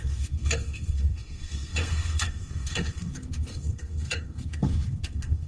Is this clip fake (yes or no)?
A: yes